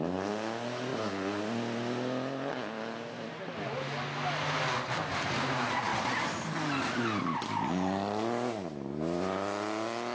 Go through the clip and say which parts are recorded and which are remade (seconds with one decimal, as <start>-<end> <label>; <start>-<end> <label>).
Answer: 0.0-10.1 recorded